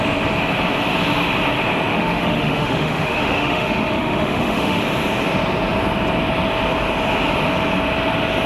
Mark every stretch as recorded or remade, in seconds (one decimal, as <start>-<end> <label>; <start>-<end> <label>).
0.0-1.9 recorded; 1.9-4.8 remade; 4.8-8.5 recorded